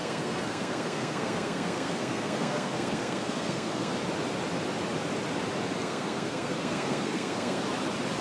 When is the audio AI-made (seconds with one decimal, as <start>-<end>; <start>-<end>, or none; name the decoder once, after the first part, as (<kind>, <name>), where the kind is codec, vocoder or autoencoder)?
0.0-3.9 (codec, SNAC); 5.8-7.6